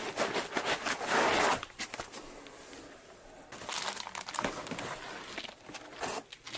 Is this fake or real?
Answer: real